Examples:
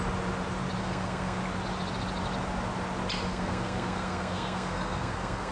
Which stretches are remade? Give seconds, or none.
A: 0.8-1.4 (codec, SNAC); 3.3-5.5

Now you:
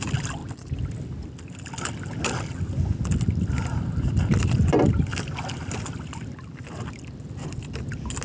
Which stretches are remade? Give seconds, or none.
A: none

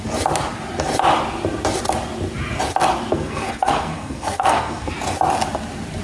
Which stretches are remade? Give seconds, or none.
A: 3.1-4.9 (codec, SNAC)

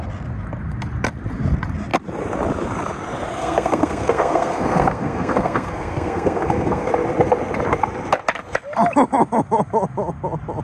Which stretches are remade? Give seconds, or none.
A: 3.4-6.9 (codec, SNAC)

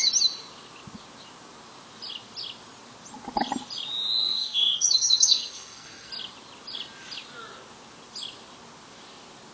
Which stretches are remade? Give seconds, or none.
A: 4.2-6.1 (codec, SNAC)